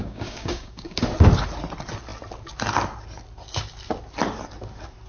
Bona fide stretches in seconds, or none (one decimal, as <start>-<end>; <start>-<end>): 1.0-5.1